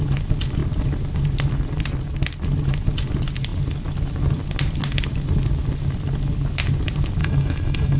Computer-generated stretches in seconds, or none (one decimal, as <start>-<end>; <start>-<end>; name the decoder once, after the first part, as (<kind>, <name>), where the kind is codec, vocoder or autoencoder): 7.2-8.0 (autoencoder, DAC-VAE)